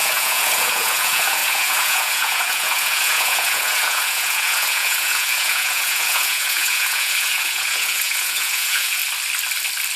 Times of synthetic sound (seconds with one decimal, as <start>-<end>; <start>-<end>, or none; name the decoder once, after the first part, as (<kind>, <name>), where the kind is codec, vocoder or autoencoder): 0.0-9.0 (vocoder, Vocos)